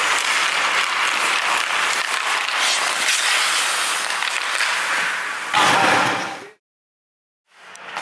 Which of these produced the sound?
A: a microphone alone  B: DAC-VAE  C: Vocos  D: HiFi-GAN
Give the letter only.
A